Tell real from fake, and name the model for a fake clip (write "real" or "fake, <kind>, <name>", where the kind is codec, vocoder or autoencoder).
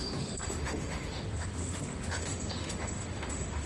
fake, autoencoder, DAC-VAE